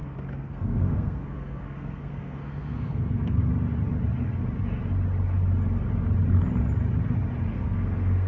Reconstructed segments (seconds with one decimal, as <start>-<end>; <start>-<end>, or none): 0.0-3.4; 7.5-8.3